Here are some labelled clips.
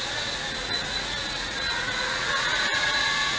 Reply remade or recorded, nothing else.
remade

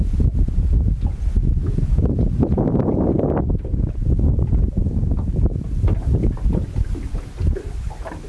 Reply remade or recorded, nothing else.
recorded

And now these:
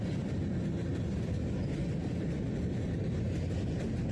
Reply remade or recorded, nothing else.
recorded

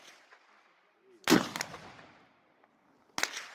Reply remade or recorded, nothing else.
recorded